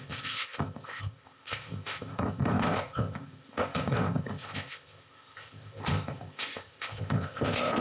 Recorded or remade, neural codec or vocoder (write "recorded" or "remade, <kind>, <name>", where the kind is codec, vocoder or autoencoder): remade, codec, ZipCodec